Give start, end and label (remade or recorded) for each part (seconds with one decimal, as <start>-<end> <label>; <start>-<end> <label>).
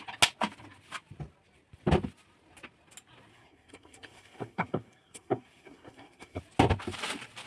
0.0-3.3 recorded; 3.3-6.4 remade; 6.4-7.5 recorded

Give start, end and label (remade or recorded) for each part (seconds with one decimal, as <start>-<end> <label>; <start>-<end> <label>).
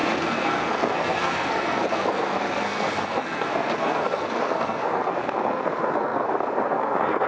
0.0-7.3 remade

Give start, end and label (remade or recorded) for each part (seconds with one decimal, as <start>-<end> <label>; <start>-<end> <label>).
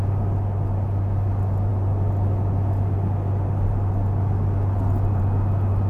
0.0-5.9 recorded